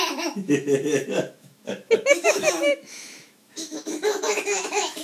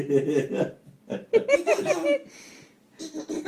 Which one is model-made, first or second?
first